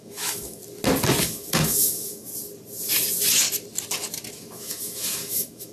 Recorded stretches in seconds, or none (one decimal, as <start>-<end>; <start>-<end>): 0.6-1.2; 2.3-4.3